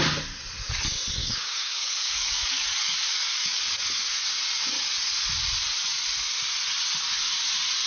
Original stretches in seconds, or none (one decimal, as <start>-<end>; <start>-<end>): 0.0-1.2; 3.6-7.9